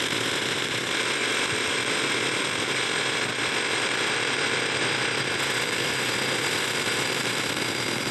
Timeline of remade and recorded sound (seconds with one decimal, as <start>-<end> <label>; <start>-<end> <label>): 0.0-1.2 recorded; 1.2-2.8 remade; 2.8-3.3 recorded; 3.3-7.6 remade; 7.6-8.1 recorded